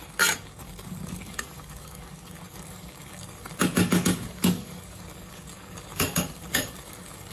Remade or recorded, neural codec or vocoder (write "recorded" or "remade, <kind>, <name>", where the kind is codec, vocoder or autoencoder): remade, codec, DAC